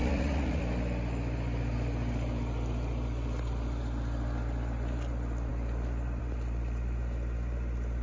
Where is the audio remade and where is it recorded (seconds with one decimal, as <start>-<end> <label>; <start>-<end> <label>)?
0.0-0.6 remade; 0.6-8.0 recorded